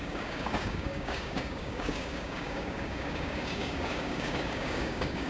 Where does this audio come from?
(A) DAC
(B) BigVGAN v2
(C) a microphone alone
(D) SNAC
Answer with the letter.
A